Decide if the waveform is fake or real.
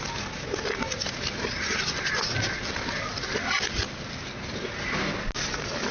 real